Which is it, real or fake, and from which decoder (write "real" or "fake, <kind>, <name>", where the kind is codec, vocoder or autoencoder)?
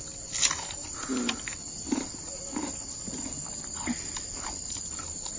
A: real